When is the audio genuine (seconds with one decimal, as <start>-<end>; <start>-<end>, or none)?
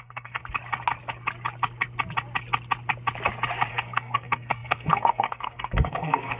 0.4-3.7